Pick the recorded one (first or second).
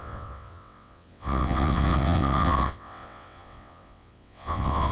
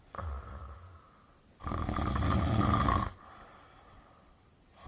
second